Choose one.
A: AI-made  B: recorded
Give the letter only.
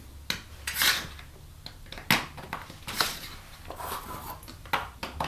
B